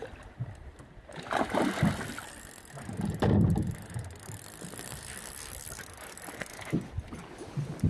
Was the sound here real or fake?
real